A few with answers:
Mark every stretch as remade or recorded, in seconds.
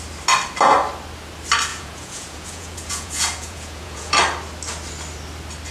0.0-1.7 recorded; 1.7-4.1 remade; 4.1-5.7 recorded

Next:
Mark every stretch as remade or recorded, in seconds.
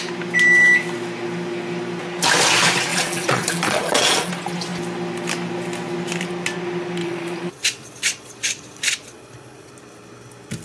0.0-2.9 recorded; 2.9-4.3 remade; 4.3-7.0 recorded; 7.0-9.7 remade; 9.7-10.6 recorded